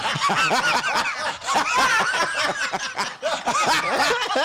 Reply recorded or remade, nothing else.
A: recorded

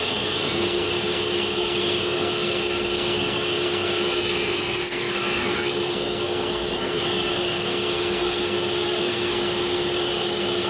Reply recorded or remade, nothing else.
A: remade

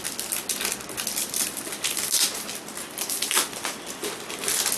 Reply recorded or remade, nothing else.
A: recorded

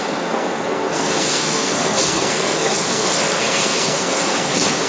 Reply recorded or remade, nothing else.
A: remade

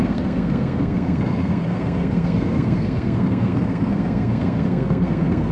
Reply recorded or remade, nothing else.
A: remade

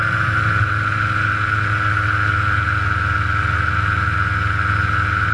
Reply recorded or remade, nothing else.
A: recorded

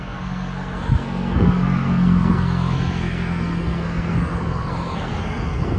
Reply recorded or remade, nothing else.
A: remade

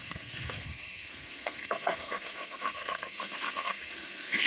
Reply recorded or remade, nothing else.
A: remade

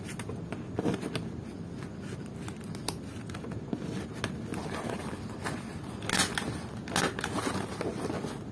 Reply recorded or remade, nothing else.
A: recorded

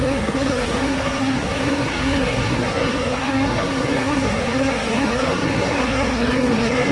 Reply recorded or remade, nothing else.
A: remade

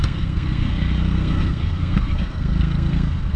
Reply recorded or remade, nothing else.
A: remade